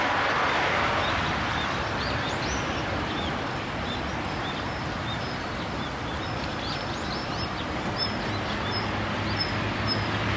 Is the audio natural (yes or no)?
yes